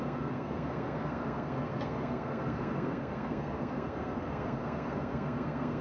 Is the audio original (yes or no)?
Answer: no